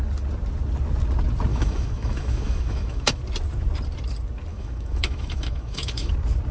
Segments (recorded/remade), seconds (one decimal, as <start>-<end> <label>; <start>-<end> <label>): 0.0-1.5 recorded; 1.5-3.2 remade; 3.2-4.5 recorded; 4.5-6.1 remade; 6.1-6.5 recorded